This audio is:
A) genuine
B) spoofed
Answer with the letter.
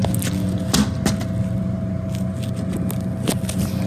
A